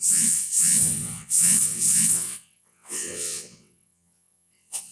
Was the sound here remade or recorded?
remade